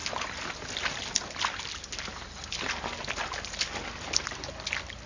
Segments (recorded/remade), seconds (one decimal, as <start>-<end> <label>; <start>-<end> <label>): 0.0-5.1 recorded